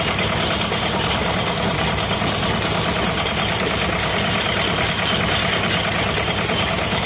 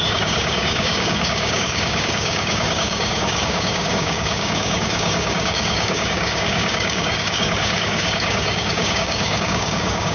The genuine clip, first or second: first